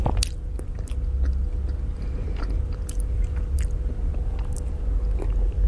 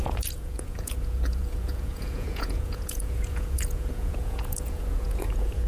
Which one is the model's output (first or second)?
second